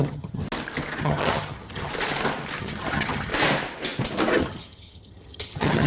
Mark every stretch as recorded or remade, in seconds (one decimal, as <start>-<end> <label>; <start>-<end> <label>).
0.0-0.4 remade; 0.4-1.0 recorded; 1.0-1.9 remade; 1.9-2.6 recorded; 2.6-3.3 remade; 3.3-4.4 recorded; 4.4-5.9 remade